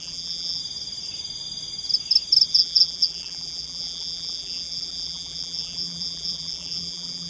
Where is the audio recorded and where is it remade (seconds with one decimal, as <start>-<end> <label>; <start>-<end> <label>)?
0.0-0.6 remade; 0.6-2.5 recorded; 2.5-7.3 remade